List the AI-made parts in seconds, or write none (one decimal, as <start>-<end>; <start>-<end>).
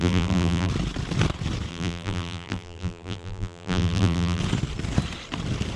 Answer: 0.0-0.7; 1.7-4.4